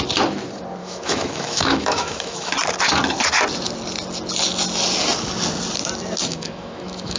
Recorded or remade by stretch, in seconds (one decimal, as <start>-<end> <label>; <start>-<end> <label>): 0.0-0.8 recorded; 0.8-2.5 remade; 2.5-6.3 recorded; 6.3-7.2 remade